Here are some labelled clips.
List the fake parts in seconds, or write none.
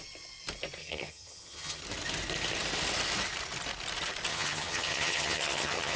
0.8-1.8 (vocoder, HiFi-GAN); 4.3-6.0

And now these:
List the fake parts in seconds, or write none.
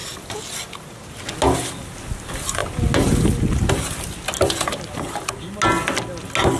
none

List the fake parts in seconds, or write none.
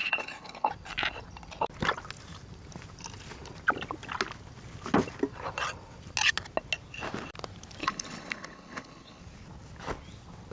0.0-0.7 (codec, HILCodec); 7.8-9.2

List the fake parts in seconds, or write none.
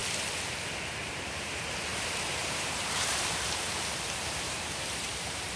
1.0-5.6 (vocoder, BigVGAN v2)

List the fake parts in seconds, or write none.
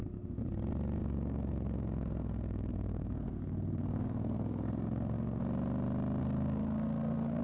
1.0-5.4 (codec, SNAC); 6.2-7.4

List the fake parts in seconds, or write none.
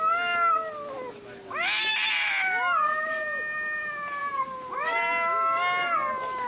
4.2-5.0 (vocoder, BigVGAN v2)